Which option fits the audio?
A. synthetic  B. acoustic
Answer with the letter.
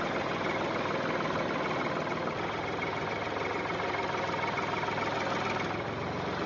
B